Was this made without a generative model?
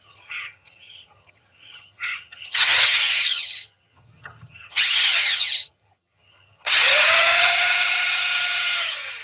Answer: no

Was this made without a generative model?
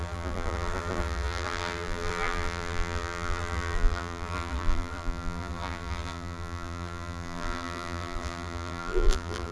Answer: no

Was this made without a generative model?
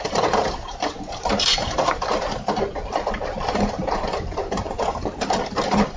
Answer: no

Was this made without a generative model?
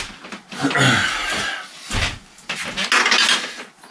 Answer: yes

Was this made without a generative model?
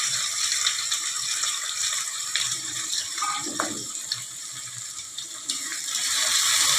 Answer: no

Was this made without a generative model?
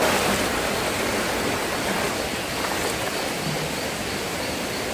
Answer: yes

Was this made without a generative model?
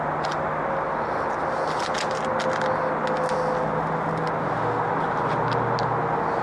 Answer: yes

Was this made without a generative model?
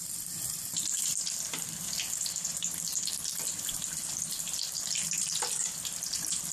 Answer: no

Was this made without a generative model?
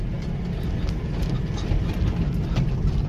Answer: yes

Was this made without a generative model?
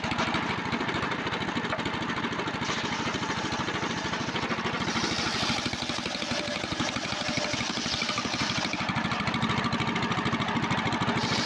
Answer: yes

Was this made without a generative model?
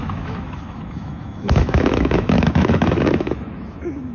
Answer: no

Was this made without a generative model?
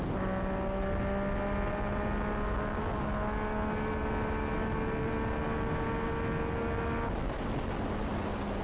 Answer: yes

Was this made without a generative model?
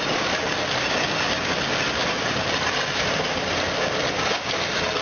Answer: yes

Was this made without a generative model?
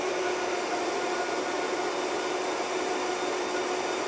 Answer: yes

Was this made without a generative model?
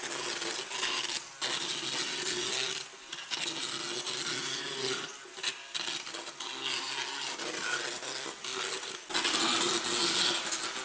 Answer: yes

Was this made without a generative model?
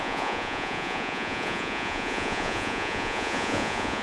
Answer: no